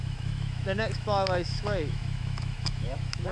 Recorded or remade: remade